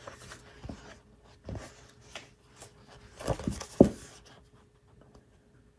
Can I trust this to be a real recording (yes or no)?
yes